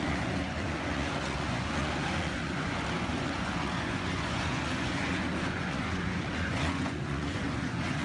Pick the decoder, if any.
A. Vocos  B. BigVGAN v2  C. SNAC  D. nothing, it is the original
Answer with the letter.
A